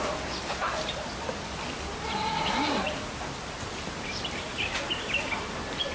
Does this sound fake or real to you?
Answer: real